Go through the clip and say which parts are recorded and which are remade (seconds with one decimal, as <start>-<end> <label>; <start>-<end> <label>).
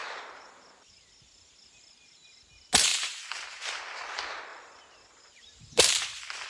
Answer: 0.0-0.6 remade; 0.6-2.9 recorded; 2.9-3.8 remade; 3.8-4.5 recorded; 4.5-6.0 remade; 6.0-6.5 recorded